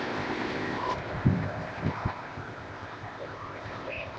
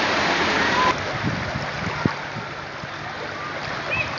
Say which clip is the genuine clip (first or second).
second